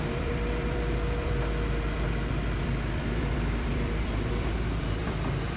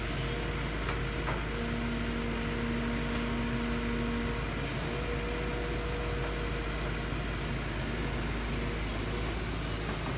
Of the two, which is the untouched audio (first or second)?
second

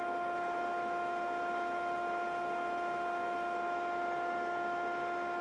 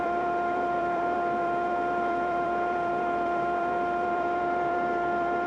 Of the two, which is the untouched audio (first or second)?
first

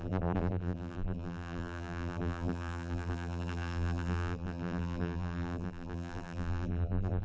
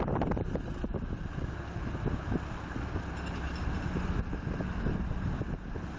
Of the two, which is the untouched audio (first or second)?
second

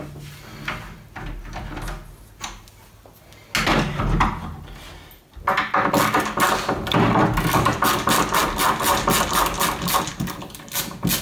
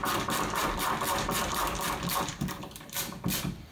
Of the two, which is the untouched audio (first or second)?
first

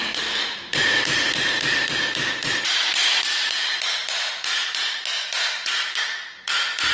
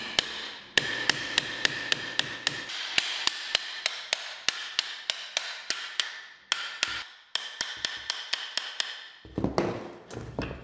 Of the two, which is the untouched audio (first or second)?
second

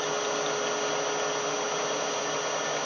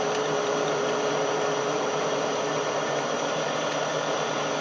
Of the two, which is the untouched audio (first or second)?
first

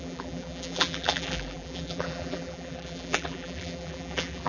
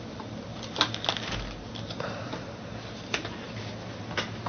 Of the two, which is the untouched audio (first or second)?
second